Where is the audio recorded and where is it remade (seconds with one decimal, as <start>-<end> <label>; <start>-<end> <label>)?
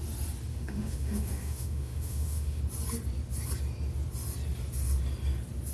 0.0-0.5 recorded; 0.5-2.6 remade; 2.6-5.7 recorded